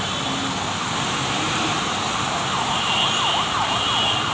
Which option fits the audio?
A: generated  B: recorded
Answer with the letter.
B